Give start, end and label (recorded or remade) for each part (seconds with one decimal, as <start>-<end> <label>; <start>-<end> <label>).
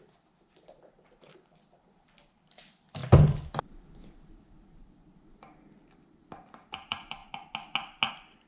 0.0-3.0 remade; 3.0-3.5 recorded; 3.5-7.2 remade; 7.2-8.1 recorded; 8.1-8.5 remade